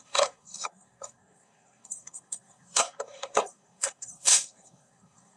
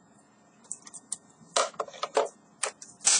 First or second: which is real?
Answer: second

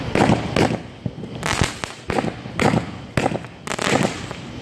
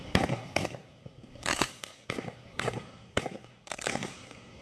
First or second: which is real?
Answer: first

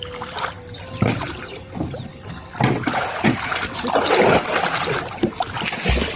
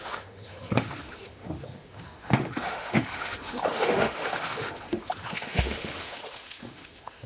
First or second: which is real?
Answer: first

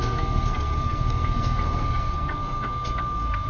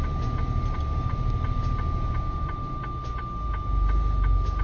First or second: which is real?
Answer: second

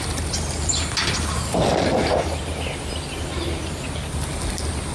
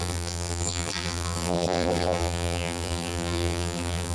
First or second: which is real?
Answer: first